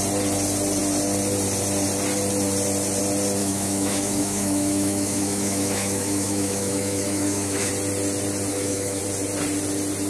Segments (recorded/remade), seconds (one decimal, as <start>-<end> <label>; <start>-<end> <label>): 0.0-3.4 recorded; 3.4-7.7 remade; 7.7-8.5 recorded; 8.5-9.0 remade; 9.0-10.1 recorded